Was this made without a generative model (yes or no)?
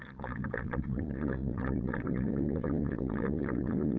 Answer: no